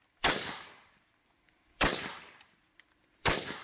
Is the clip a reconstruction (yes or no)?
yes